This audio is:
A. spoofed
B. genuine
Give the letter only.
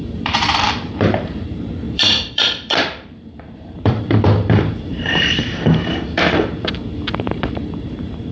A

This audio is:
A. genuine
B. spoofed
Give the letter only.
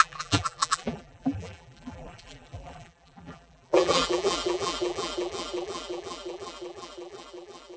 B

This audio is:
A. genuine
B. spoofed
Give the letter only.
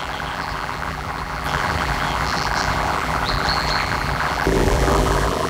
B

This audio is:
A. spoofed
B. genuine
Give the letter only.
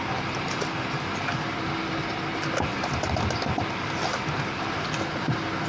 B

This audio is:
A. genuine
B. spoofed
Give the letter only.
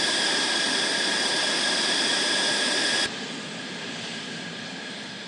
B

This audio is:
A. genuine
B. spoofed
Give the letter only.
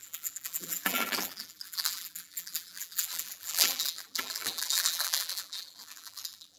B